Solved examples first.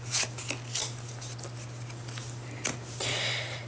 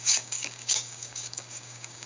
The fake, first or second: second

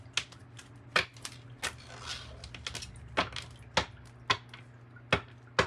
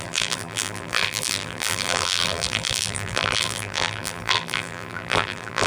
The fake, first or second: second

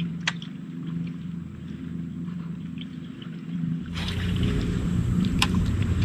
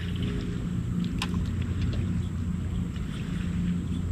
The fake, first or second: first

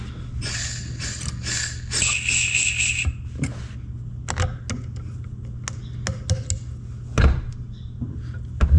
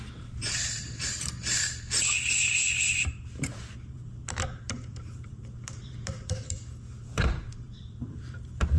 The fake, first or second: second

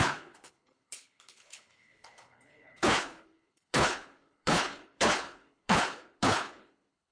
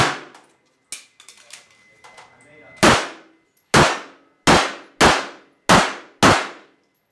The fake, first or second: first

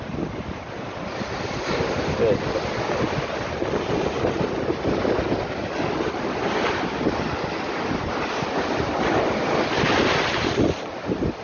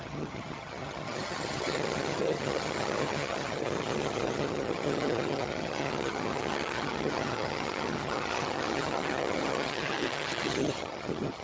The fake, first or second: second